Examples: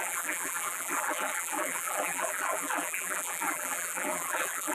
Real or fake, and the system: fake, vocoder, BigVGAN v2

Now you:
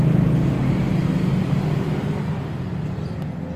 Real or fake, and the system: real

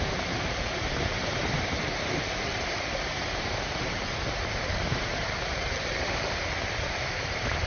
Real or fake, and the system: fake, vocoder, BigVGAN v2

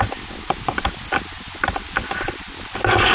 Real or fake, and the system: real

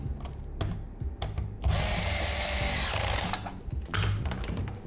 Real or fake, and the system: real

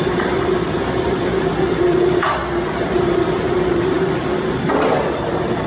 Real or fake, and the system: fake, vocoder, BigVGAN v2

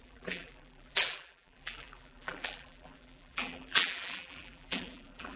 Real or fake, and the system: fake, vocoder, BigVGAN v2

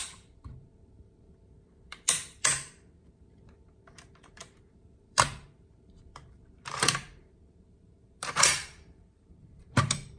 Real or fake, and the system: fake, vocoder, BigVGAN v2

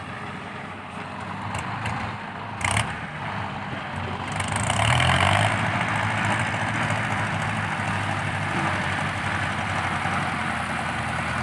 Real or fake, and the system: fake, vocoder, BigVGAN v2